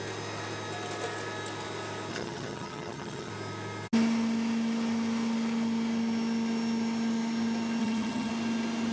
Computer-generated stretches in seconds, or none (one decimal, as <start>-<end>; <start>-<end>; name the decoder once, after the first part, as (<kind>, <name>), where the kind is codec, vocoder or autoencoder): 2.1-3.3 (vocoder, HiFi-GAN); 7.8-8.3